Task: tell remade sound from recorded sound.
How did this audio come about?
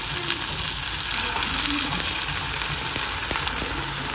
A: recorded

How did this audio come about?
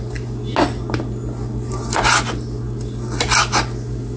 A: recorded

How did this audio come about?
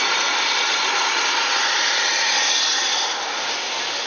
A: recorded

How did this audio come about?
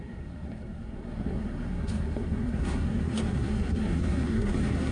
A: remade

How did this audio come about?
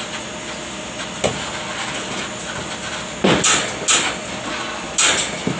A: recorded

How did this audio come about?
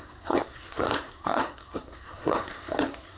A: remade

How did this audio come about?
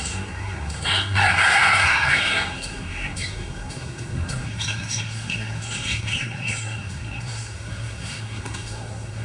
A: remade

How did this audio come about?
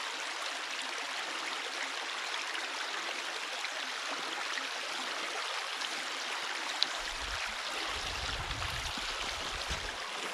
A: recorded